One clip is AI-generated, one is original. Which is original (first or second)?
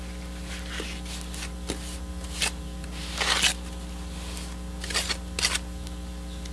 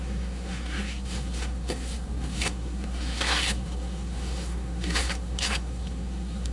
first